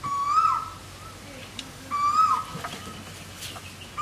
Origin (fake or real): real